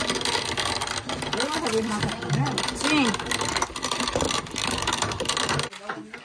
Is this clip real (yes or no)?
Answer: yes